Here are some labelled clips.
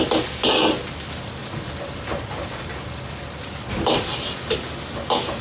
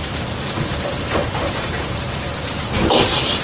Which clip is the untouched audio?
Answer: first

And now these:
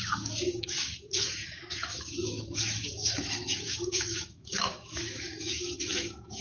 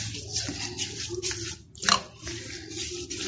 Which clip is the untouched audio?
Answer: second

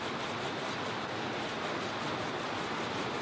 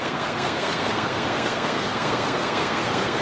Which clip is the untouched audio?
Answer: first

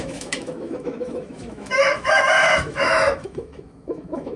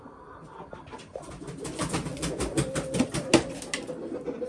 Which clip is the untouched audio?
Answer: second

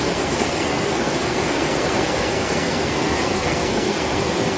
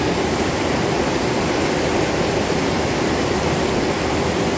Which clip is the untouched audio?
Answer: second